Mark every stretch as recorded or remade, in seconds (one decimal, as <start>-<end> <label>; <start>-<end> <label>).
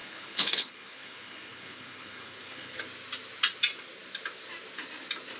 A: 0.0-2.8 remade; 2.8-5.4 recorded